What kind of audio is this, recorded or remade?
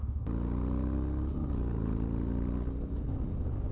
recorded